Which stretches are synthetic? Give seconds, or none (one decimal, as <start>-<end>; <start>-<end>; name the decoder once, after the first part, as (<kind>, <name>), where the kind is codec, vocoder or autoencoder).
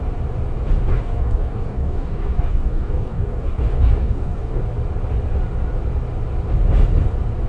0.9-4.6 (codec, DAC)